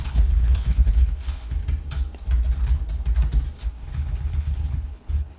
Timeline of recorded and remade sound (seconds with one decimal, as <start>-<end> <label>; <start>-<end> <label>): 0.0-1.6 remade; 1.6-3.6 recorded; 3.6-5.4 remade